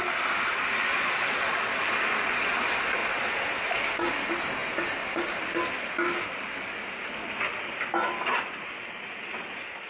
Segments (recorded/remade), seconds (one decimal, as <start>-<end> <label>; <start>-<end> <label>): 0.0-0.9 recorded; 0.9-1.6 remade; 1.6-3.0 recorded; 3.0-3.5 remade; 3.5-9.9 recorded